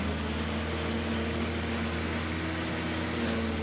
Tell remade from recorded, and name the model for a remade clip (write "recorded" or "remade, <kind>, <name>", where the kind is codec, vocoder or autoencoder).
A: recorded